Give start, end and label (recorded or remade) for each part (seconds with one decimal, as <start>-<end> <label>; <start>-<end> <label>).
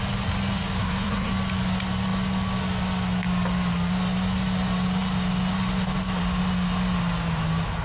0.0-0.8 recorded; 0.8-1.3 remade; 1.3-7.8 recorded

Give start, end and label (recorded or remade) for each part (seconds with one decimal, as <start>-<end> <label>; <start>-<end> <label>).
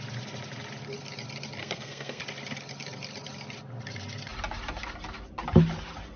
0.0-1.6 recorded; 1.6-2.2 remade; 2.2-6.2 recorded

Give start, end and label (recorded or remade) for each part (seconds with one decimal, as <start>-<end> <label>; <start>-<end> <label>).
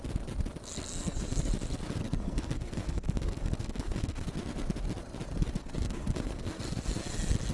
0.0-0.9 recorded; 0.9-1.5 remade; 1.5-2.0 recorded; 2.0-4.3 remade; 4.3-5.6 recorded; 5.6-6.6 remade; 6.6-7.5 recorded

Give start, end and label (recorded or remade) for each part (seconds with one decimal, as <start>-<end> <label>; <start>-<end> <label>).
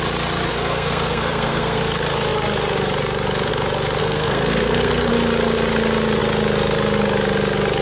0.0-0.5 recorded; 0.5-1.8 remade; 1.8-4.0 recorded; 4.0-5.1 remade; 5.1-7.8 recorded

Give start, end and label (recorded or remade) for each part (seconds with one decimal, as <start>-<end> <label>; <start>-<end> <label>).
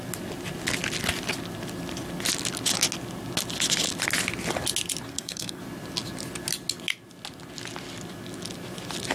0.0-5.1 recorded; 5.1-5.6 remade; 5.6-9.1 recorded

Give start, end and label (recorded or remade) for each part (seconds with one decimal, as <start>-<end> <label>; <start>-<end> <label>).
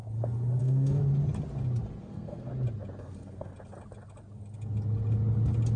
0.0-0.6 recorded; 0.6-1.0 remade; 1.0-2.0 recorded; 2.0-2.5 remade; 2.5-3.0 recorded; 3.0-3.5 remade; 3.5-5.8 recorded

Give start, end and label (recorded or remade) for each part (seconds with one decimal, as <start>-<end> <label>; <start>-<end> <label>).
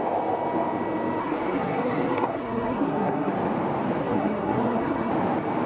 0.0-1.2 recorded; 1.2-3.3 remade; 3.3-4.0 recorded; 4.0-5.1 remade; 5.1-5.7 recorded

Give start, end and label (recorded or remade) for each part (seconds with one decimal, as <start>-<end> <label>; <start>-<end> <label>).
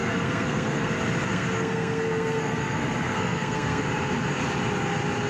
0.0-0.9 remade; 0.9-1.3 recorded; 1.3-3.8 remade; 3.8-5.3 recorded